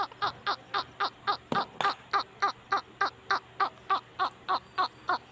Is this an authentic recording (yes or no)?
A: yes